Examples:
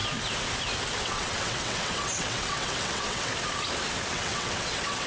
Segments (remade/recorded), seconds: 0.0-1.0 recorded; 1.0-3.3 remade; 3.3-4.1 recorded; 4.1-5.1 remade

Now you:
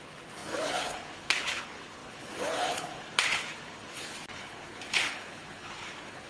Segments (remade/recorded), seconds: 0.0-6.3 remade